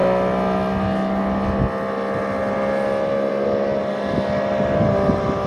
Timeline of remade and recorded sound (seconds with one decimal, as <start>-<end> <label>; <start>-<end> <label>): 0.0-5.5 recorded

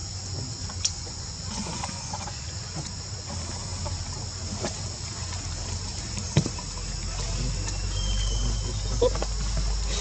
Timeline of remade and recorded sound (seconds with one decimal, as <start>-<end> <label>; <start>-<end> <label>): 0.0-3.0 remade; 3.0-10.0 recorded

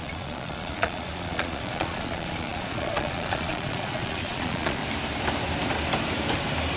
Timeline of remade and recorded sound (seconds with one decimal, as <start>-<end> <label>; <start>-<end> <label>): 0.0-4.8 remade; 4.8-6.8 recorded

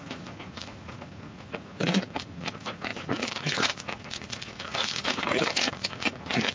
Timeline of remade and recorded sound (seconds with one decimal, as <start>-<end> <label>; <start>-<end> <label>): 0.0-6.5 remade

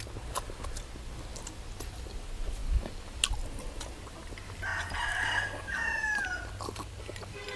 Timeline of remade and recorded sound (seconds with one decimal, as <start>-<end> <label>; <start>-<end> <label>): 0.0-7.6 recorded

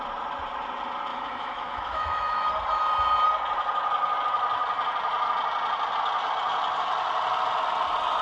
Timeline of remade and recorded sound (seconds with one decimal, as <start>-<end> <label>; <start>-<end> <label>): 0.0-1.1 recorded; 1.1-2.5 remade; 2.5-8.2 recorded

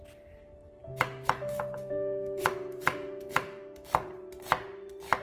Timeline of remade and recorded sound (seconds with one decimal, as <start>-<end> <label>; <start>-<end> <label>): 0.0-0.8 recorded; 0.8-3.9 remade; 3.9-5.2 recorded